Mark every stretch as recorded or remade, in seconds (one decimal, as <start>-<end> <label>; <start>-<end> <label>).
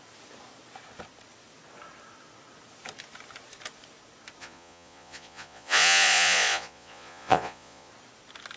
0.0-4.4 recorded; 4.4-7.9 remade; 7.9-8.6 recorded